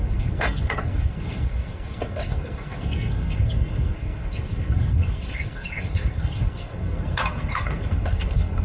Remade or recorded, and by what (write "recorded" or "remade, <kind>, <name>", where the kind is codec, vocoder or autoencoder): remade, codec, SNAC